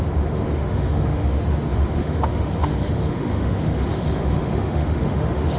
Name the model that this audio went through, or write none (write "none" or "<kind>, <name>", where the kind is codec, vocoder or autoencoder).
autoencoder, DAC-VAE